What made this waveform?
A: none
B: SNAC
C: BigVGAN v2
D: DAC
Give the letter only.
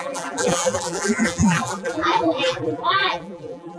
C